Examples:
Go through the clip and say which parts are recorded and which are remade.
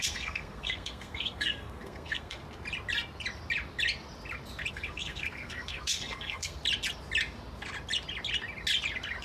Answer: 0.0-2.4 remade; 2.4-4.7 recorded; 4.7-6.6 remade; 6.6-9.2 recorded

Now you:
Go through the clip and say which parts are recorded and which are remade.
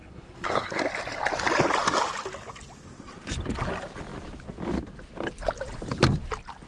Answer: 0.0-0.8 remade; 0.8-6.7 recorded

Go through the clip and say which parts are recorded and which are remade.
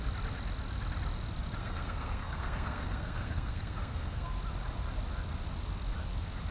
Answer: 0.0-1.6 recorded; 1.6-4.3 remade; 4.3-6.5 recorded